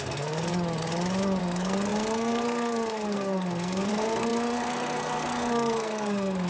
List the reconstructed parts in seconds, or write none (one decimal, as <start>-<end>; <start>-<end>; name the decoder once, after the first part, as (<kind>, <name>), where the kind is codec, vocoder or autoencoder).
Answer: 0.0-0.5 (codec, SNAC); 1.4-6.5